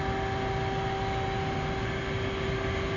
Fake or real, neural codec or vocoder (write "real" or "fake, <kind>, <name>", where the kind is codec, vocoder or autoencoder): real